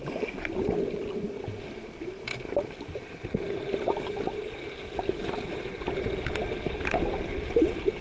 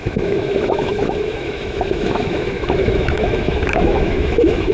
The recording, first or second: first